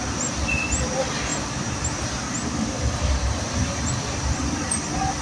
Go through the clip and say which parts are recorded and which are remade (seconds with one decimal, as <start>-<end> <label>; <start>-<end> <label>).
0.0-1.3 recorded; 1.3-4.4 remade; 4.4-5.2 recorded